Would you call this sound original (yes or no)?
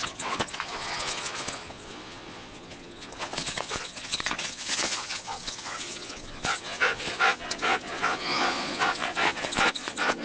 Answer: no